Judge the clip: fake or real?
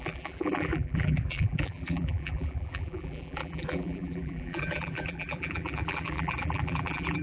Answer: fake